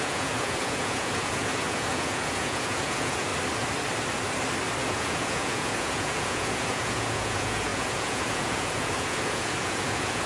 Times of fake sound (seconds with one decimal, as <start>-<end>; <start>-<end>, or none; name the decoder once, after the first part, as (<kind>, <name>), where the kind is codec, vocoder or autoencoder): 0.0-3.3 (vocoder, Vocos); 4.8-10.3